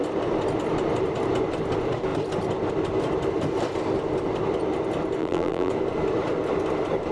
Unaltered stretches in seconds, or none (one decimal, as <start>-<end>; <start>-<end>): 0.0-5.2; 5.7-7.1